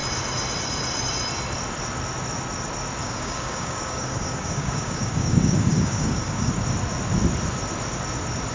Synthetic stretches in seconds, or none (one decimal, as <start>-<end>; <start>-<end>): 3.0-6.5